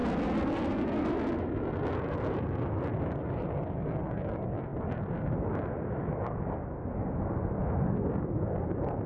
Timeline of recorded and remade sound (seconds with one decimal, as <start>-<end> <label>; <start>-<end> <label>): 0.0-9.1 recorded

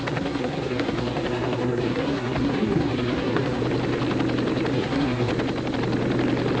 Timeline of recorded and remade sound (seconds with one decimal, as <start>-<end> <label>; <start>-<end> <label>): 0.0-3.6 remade; 3.6-4.7 recorded; 4.7-5.3 remade; 5.3-6.6 recorded

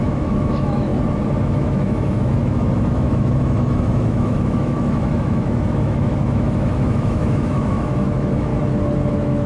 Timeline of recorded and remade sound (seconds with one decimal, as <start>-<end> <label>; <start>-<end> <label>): 0.0-0.9 remade; 0.9-1.4 recorded; 1.4-8.5 remade; 8.5-9.1 recorded; 9.1-9.5 remade

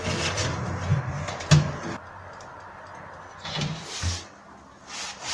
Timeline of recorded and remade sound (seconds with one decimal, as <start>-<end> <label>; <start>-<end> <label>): 0.0-5.3 recorded

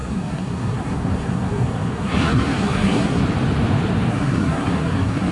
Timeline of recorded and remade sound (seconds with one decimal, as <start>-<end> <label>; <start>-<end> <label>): 0.0-3.2 remade; 3.2-4.1 recorded; 4.1-5.3 remade

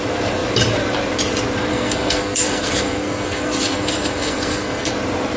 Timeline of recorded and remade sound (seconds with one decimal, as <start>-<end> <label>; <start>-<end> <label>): 0.0-1.7 recorded; 1.7-4.9 remade; 4.9-5.4 recorded

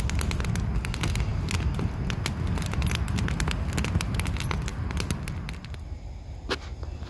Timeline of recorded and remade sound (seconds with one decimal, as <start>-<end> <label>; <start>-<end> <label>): 0.0-7.1 recorded

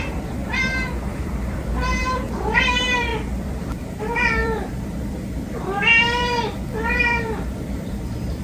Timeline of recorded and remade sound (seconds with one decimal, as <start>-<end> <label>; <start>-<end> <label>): 0.0-0.4 remade; 0.4-1.1 recorded; 1.1-8.4 remade